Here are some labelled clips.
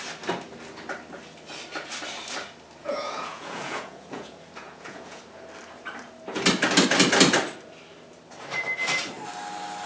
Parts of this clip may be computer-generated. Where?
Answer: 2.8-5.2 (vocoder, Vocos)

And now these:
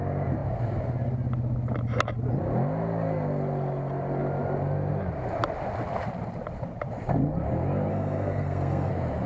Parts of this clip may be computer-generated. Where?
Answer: 7.9-8.9 (codec, SNAC)